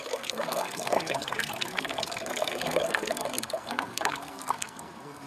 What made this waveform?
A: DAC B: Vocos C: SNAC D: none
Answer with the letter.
C